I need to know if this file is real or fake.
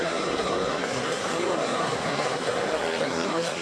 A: fake